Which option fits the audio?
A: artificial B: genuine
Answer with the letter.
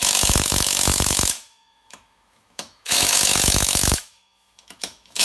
A